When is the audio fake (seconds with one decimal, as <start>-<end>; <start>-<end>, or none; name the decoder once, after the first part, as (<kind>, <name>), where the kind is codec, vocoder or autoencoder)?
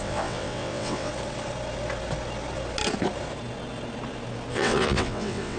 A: 0.0-1.1 (vocoder, WaveNeXt); 4.5-5.6